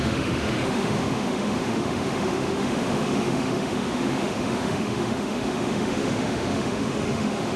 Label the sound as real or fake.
fake